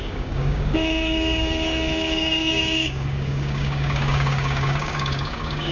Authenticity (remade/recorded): remade